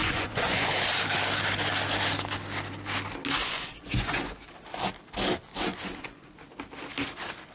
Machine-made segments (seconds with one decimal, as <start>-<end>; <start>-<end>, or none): 0.0-0.7; 3.4-4.5; 5.7-6.4